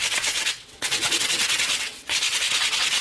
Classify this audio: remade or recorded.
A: remade